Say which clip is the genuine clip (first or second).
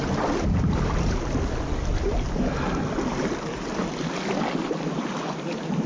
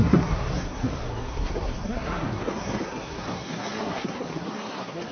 first